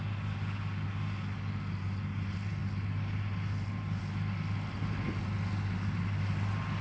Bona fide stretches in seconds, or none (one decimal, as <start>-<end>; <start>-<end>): 0.0-6.8